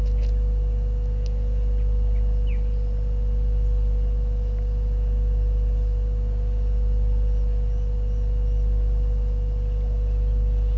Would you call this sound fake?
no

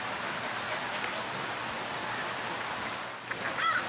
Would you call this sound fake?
no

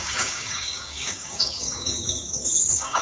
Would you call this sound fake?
yes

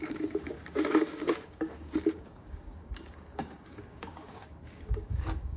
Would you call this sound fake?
yes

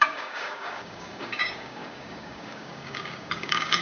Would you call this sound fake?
yes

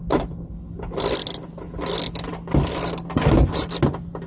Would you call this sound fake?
no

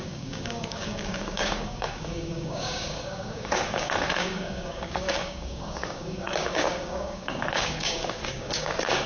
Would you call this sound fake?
yes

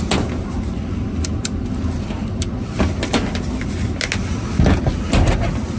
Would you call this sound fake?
no